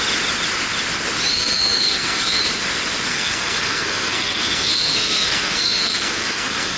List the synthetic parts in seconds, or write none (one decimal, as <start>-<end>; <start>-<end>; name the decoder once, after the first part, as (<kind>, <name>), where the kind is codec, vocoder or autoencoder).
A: 1.3-2.4 (codec, SNAC); 3.1-6.8